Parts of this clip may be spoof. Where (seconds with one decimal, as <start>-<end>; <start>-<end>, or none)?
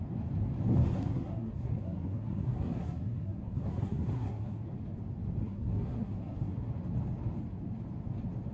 1.0-4.6; 5.4-6.7